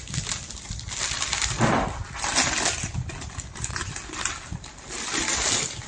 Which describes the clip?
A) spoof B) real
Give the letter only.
B